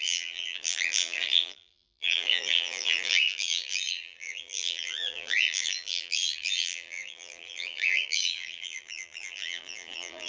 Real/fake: fake